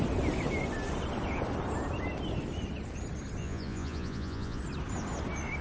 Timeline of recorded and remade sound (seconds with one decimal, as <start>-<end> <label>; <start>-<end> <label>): 0.0-3.4 recorded; 3.4-4.6 remade; 4.6-5.6 recorded